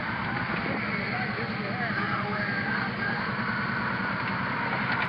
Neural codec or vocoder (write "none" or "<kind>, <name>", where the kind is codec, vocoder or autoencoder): none